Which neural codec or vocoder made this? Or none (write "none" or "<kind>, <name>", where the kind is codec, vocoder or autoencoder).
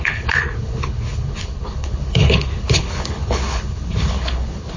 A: codec, HILCodec